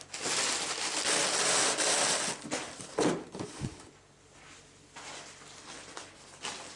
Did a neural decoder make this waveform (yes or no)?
no